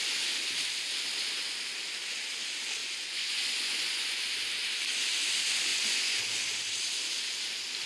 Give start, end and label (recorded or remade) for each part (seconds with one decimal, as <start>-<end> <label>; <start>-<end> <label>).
0.0-2.8 recorded; 2.8-4.2 remade; 4.2-5.7 recorded; 5.7-6.2 remade; 6.2-7.9 recorded